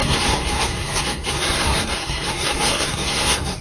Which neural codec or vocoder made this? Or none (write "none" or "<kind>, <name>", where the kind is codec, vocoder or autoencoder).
codec, SNAC